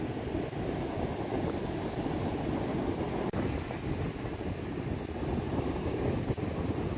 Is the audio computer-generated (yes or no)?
no